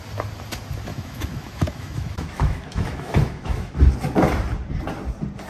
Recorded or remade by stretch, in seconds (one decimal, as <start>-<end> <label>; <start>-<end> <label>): 0.0-0.9 recorded; 0.9-3.7 remade; 3.7-5.5 recorded